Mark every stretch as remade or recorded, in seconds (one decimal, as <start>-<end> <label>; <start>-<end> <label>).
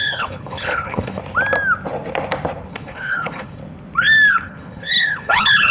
0.0-1.2 remade; 1.2-2.7 recorded; 2.7-3.6 remade; 3.6-4.3 recorded; 4.3-5.7 remade